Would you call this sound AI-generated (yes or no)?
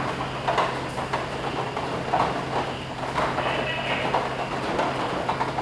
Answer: no